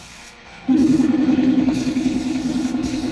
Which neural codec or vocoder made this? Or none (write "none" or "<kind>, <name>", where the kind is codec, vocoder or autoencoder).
codec, SNAC